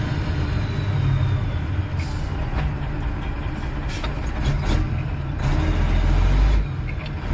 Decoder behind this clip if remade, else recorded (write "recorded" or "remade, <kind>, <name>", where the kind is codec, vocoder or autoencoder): recorded